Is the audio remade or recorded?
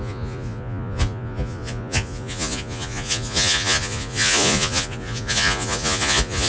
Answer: remade